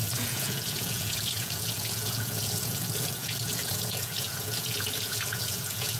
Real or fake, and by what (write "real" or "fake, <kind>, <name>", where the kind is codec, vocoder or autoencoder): fake, vocoder, Vocos